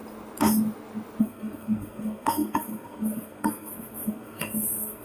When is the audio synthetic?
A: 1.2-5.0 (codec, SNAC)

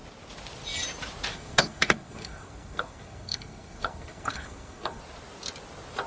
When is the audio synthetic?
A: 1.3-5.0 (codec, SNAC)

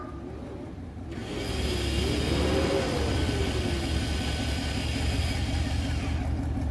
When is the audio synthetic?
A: none

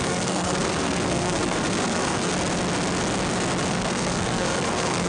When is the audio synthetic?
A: 0.0-2.3 (codec, SNAC); 3.7-5.1

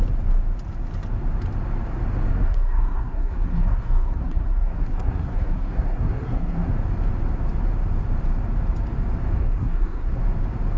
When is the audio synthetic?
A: 2.3-6.7 (codec, SNAC); 9.4-10.2

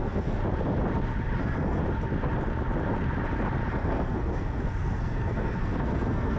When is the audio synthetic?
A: 0.0-0.4 (codec, SNAC); 1.4-1.8; 3.7-6.4

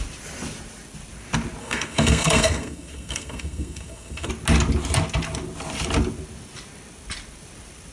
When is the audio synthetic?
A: 1.6-4.3 (codec, SNAC)

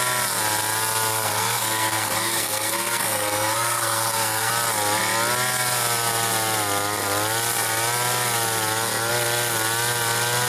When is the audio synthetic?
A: 1.1-4.5 (codec, SNAC)